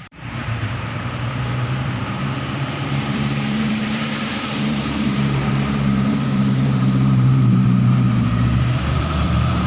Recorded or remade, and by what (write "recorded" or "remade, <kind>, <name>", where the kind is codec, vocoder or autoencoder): remade, vocoder, BigVGAN v2